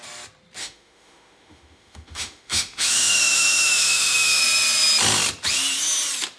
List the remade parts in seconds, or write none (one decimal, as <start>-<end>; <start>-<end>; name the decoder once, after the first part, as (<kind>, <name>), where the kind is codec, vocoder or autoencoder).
0.6-4.4 (autoencoder, DAC-VAE)